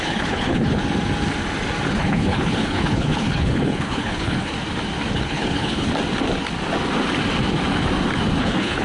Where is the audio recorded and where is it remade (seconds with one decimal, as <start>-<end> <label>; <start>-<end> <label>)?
0.0-0.8 remade; 0.8-2.0 recorded; 2.0-4.5 remade; 4.5-5.1 recorded; 5.1-5.9 remade; 5.9-8.4 recorded; 8.4-8.8 remade